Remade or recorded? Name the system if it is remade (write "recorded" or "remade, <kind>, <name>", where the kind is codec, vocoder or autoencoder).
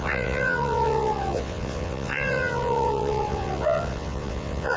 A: remade, vocoder, WaveNeXt